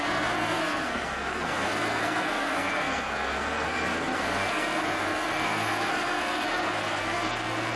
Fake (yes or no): yes